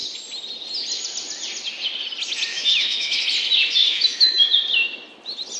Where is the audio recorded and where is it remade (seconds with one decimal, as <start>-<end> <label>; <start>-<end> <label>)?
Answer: 0.0-2.5 recorded; 2.5-3.2 remade; 3.2-3.8 recorded; 3.8-4.4 remade; 4.4-5.6 recorded